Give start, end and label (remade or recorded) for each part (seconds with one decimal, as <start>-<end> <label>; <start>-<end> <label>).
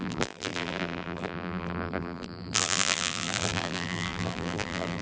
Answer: 0.0-5.0 remade